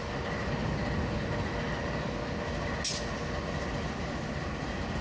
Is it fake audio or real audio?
real